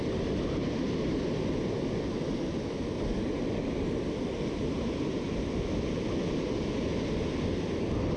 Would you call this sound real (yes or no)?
yes